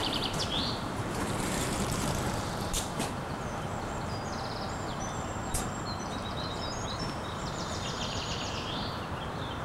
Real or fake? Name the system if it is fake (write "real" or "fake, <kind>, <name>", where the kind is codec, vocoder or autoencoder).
fake, vocoder, BigVGAN v2